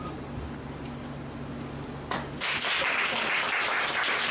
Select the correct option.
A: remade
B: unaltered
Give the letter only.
B